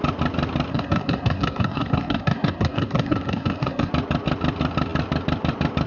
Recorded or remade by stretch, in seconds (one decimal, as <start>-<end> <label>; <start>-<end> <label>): 0.0-0.7 recorded; 0.7-3.9 remade; 3.9-5.9 recorded